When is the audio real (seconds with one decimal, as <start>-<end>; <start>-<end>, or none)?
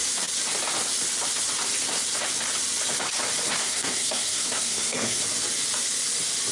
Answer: 0.0-3.6; 5.2-6.5